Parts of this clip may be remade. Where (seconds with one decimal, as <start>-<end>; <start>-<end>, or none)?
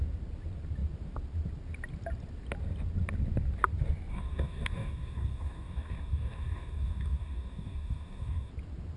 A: 4.1-8.5